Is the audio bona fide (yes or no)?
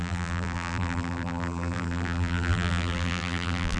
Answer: no